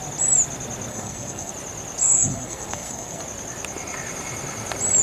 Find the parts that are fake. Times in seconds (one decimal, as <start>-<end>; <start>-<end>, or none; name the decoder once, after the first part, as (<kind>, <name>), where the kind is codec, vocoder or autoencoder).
0.9-1.5 (codec, SNAC); 2.0-3.2